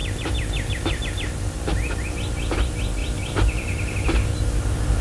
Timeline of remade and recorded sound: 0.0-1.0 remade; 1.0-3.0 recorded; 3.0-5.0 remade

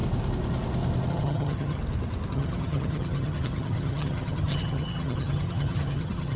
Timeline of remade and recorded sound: 0.0-1.1 recorded; 1.1-1.8 remade; 1.8-2.3 recorded; 2.3-6.4 remade

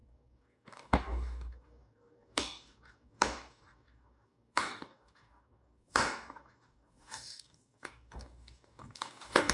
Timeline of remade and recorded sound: 0.0-9.5 remade